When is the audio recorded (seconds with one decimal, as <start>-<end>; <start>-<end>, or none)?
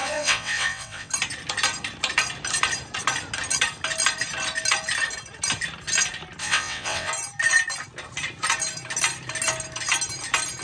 1.1-6.4; 7.1-10.6